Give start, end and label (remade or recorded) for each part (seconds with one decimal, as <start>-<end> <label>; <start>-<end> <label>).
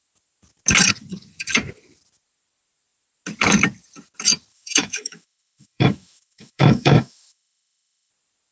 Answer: 0.0-4.5 recorded; 4.5-8.1 remade; 8.1-8.5 recorded